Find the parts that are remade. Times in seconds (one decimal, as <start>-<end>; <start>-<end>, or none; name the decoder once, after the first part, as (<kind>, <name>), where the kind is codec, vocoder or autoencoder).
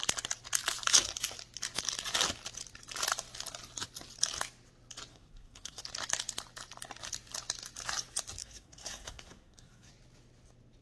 5.1-5.8 (codec, SNAC); 8.4-9.9